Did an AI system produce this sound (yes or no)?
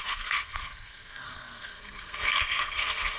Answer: yes